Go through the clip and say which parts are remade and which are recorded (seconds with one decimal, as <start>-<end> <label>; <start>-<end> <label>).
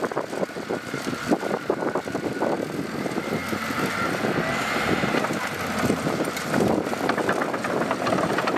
0.0-8.6 recorded